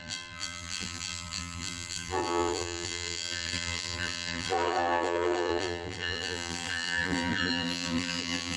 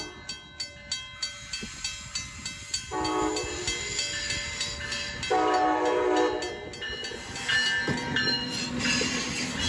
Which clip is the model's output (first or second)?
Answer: first